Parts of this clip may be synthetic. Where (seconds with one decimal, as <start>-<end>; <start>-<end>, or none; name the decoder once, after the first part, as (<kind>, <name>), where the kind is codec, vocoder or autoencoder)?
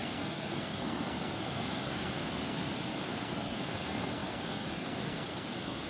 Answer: 0.0-5.9 (codec, SNAC)